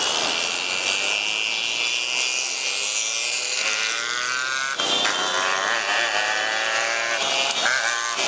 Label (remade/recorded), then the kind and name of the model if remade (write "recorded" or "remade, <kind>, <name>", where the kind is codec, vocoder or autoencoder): recorded